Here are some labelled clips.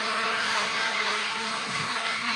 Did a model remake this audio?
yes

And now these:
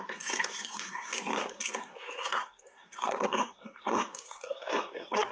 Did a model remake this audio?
yes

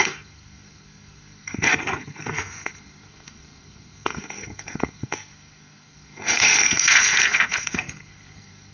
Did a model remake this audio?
yes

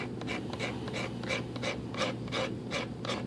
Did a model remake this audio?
no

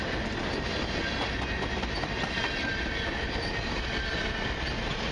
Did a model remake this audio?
no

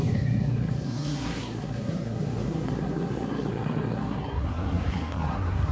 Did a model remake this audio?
yes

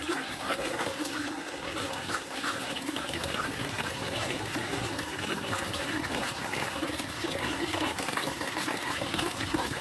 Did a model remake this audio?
yes